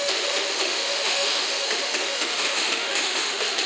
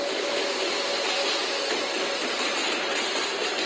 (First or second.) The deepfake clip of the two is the first